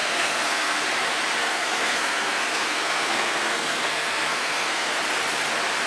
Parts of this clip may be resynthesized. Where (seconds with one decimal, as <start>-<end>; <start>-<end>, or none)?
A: 0.0-0.8; 1.4-4.9